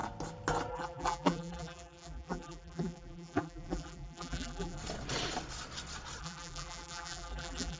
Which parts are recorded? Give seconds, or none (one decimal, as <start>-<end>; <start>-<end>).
0.0-0.7; 4.8-6.2